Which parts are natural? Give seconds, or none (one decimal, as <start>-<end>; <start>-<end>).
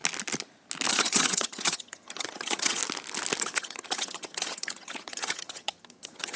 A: 0.0-0.9; 2.8-3.4